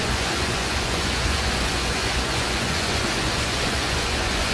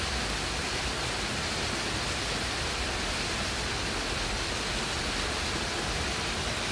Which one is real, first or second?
second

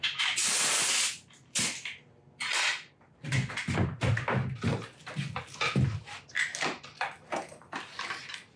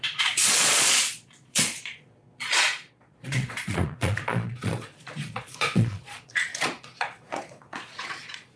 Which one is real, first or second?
first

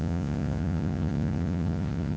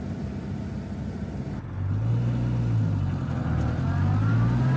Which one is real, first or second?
second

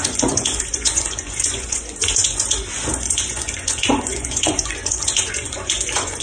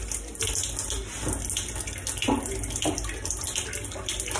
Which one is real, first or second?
second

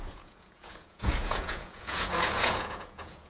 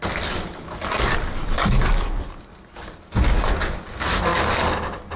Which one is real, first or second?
second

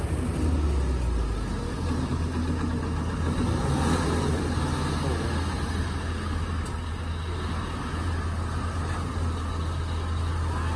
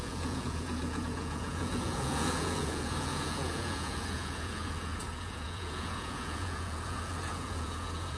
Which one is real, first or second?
first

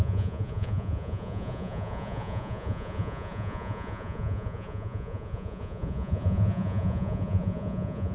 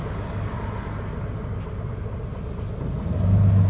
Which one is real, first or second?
second